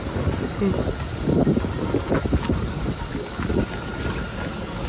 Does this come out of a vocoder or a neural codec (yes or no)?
no